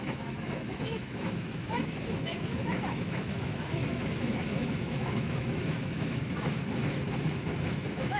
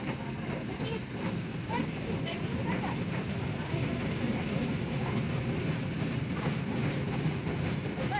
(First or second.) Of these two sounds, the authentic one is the second